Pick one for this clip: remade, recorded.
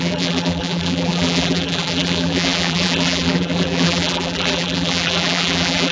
remade